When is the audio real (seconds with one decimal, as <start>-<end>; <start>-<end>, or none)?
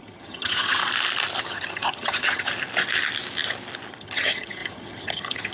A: 0.8-1.4; 2.5-3.9